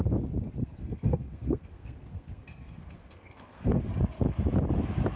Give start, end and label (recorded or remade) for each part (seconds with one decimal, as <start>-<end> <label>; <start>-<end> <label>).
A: 0.0-0.6 recorded; 0.6-3.7 remade; 3.7-5.2 recorded